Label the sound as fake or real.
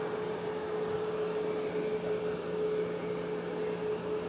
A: real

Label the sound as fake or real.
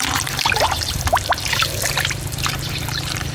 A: fake